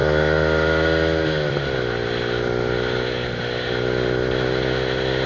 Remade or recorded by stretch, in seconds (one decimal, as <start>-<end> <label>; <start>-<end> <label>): 0.0-5.3 recorded

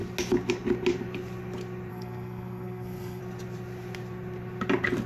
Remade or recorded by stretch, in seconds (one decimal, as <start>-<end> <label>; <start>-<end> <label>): 0.0-1.9 recorded; 1.9-3.2 remade; 3.2-5.1 recorded